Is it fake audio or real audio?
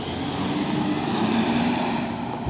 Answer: real